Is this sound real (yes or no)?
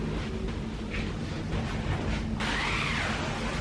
yes